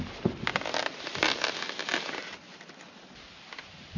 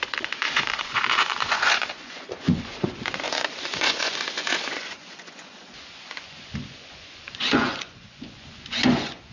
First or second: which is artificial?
second